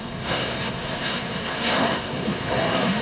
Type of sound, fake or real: fake